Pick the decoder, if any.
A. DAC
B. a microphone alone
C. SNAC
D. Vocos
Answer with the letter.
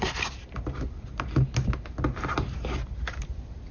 B